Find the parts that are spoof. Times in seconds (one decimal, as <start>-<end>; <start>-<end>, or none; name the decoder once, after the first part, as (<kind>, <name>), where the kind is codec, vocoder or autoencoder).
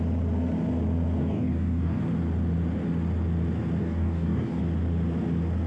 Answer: 1.2-2.0 (codec, DAC); 3.8-4.6